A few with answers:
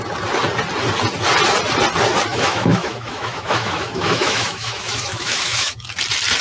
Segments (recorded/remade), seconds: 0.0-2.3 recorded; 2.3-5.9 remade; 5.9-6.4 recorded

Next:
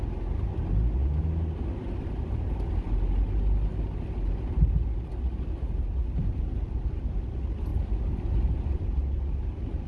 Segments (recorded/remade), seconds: 0.0-9.9 recorded

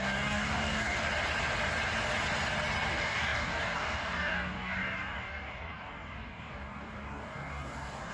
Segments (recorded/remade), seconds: 0.0-1.0 remade; 1.0-2.9 recorded; 2.9-8.1 remade

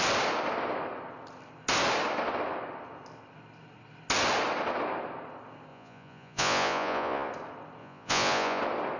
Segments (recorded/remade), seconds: 0.0-5.7 recorded; 5.7-7.3 remade; 7.3-7.8 recorded; 7.8-8.6 remade; 8.6-9.0 recorded